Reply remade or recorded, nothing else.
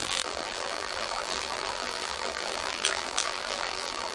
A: remade